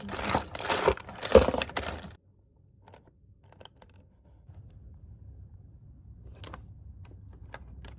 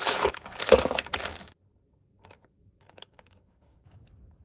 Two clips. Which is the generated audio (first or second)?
second